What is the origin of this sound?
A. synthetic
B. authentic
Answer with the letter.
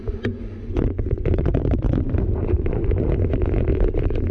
A